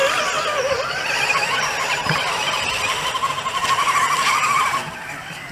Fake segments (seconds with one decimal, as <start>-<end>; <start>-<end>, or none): none